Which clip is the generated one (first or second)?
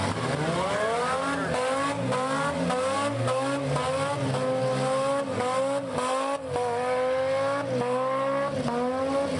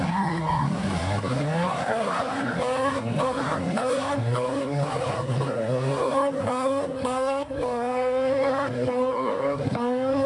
second